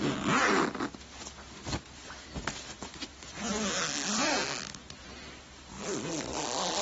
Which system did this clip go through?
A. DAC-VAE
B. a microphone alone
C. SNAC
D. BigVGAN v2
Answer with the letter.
B